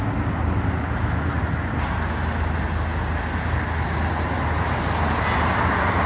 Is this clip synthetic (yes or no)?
no